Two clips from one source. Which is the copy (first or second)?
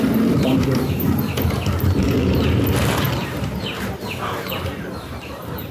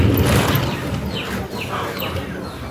first